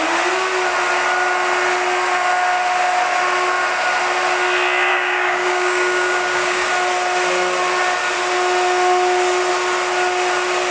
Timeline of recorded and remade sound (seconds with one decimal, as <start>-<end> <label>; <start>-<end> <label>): 0.0-4.9 recorded; 4.9-6.7 remade; 6.7-10.7 recorded